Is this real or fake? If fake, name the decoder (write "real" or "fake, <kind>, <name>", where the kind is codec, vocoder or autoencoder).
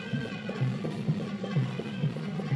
fake, vocoder, Vocos